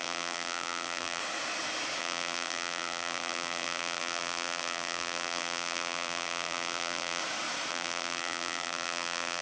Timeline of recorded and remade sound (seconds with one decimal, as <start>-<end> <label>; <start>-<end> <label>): 0.0-1.2 remade; 1.2-2.0 recorded; 2.0-7.2 remade; 7.2-7.7 recorded; 7.7-9.4 remade